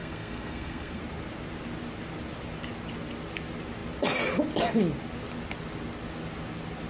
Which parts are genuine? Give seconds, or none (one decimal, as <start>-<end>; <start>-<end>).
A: 1.0-6.9